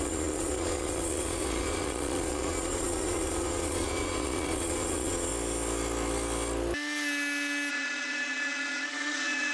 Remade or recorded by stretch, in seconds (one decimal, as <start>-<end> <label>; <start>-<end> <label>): 0.0-5.3 remade; 5.3-7.7 recorded; 7.7-9.5 remade